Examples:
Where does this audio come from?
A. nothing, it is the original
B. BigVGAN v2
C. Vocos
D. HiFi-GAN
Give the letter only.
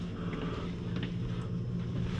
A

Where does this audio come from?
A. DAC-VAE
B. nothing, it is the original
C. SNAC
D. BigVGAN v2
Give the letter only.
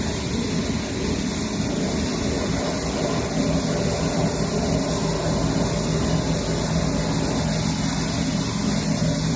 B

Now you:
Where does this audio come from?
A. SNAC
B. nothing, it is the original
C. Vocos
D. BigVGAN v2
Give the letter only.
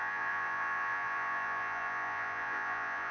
C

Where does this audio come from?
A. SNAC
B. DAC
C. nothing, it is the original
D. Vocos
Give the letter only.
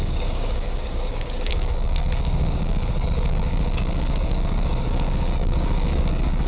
B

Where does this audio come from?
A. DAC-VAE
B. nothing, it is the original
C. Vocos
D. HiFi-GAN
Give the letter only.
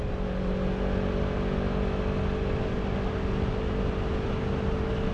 B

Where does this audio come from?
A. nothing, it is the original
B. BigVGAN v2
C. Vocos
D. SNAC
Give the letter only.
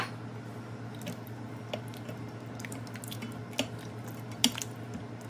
A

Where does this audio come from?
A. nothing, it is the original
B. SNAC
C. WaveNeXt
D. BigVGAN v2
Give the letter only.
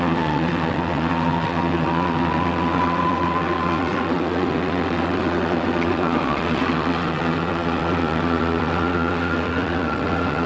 C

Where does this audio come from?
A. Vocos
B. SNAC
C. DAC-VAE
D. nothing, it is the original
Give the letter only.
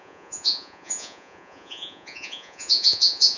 A